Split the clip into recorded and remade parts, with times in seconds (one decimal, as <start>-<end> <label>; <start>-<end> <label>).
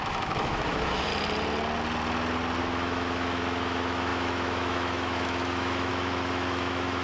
0.0-1.1 remade; 1.1-2.6 recorded; 2.6-7.0 remade